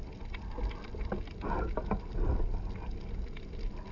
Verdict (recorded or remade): recorded